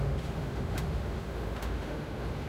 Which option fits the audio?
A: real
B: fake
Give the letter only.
B